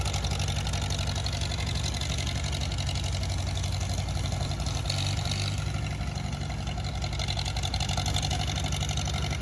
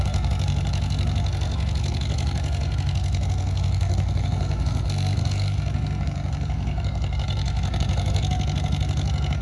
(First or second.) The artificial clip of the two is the second